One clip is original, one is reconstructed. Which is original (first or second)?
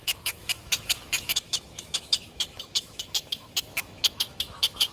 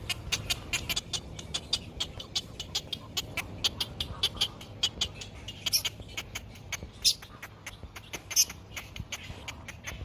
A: second